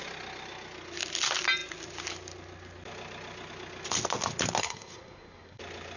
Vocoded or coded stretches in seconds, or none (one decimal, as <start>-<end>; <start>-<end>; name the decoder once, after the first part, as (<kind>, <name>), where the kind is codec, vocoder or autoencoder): 4.6-5.6 (codec, SNAC)